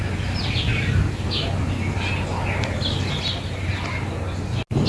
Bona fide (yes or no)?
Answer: yes